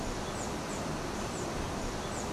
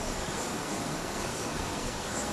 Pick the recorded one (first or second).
first